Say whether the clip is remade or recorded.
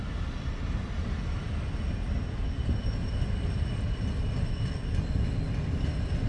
recorded